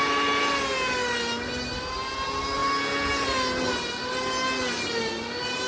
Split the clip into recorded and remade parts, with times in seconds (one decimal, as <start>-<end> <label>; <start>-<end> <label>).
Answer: 0.0-5.7 recorded